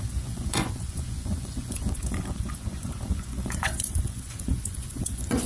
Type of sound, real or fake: fake